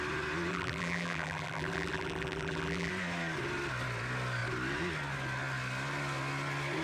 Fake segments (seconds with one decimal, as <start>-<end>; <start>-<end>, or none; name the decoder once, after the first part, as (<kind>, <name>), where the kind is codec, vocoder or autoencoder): 0.5-2.9 (vocoder, BigVGAN v2)